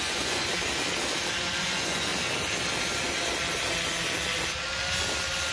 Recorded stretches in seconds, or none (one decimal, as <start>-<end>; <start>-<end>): 0.5-1.4; 2.1-5.5